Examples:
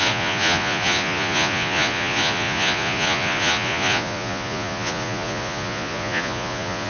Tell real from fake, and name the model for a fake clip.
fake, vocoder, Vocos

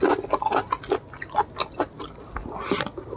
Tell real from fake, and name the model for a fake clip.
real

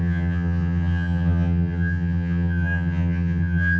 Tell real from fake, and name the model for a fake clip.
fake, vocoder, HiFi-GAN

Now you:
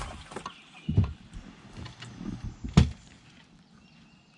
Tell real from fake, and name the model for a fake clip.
real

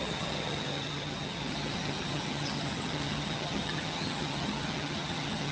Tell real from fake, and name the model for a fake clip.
fake, vocoder, HiFi-GAN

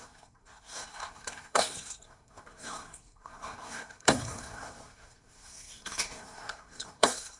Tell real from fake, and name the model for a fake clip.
fake, codec, SNAC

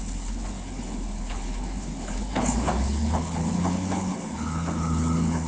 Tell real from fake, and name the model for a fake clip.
fake, codec, HILCodec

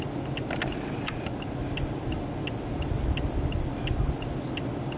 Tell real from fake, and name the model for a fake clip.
real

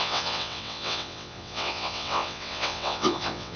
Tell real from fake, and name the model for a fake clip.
fake, vocoder, WaveNeXt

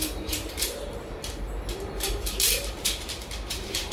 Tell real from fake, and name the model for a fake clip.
fake, vocoder, BigVGAN v2